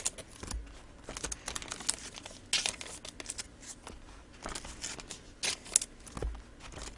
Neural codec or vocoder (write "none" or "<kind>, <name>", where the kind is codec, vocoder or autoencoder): none